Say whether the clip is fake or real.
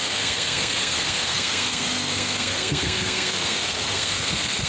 fake